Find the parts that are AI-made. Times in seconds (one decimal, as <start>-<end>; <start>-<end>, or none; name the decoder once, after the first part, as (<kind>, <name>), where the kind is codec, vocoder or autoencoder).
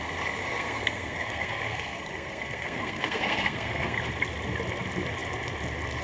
0.4-4.0 (codec, SNAC)